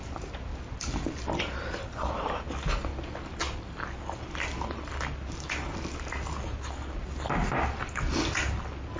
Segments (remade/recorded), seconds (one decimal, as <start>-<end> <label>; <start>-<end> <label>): 0.0-9.0 recorded